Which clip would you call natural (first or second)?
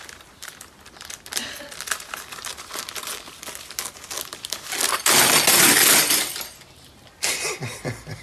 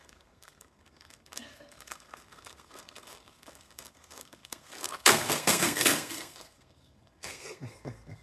first